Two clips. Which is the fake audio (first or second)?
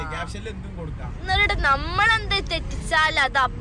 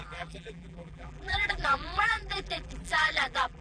second